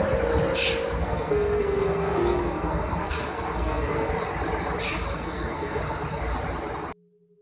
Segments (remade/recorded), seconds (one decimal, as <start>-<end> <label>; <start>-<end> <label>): 0.0-1.0 recorded; 1.0-4.1 remade; 4.1-5.1 recorded; 5.1-5.8 remade; 5.8-7.4 recorded